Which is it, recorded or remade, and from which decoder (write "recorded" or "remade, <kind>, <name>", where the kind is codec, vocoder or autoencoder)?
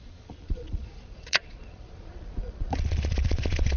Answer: remade, vocoder, Vocos